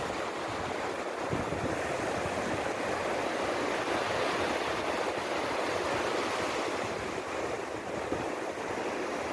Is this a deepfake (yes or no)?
no